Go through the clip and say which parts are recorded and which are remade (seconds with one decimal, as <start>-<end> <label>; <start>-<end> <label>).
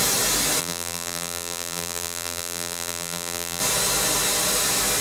0.0-0.6 recorded; 0.6-3.6 remade; 3.6-5.0 recorded